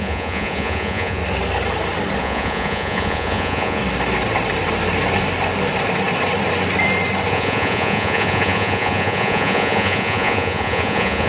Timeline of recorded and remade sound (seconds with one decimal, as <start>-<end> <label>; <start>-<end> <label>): 0.0-1.2 remade; 1.2-2.2 recorded; 2.2-3.8 remade; 3.8-7.3 recorded; 7.3-11.3 remade